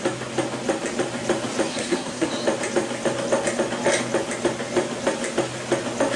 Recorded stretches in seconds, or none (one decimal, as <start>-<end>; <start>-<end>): 0.0-1.7; 2.3-6.2